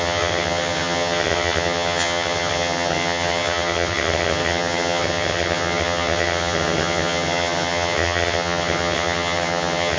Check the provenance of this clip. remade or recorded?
remade